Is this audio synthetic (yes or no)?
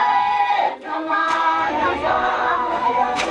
yes